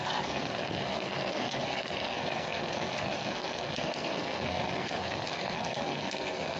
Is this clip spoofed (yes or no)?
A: yes